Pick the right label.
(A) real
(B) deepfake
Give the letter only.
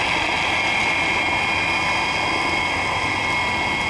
A